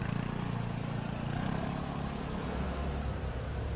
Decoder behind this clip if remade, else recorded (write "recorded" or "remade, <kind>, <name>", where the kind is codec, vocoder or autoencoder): recorded